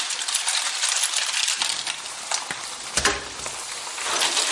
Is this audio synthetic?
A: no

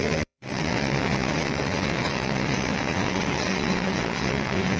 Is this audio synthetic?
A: yes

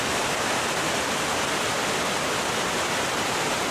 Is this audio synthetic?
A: no